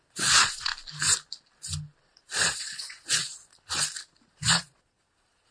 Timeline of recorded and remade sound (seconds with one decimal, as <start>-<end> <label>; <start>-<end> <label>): 0.0-0.7 remade; 0.7-2.0 recorded; 2.0-3.5 remade; 3.5-4.3 recorded; 4.3-5.5 remade